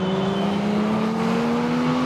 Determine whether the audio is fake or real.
real